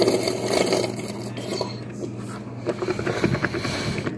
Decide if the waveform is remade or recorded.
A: recorded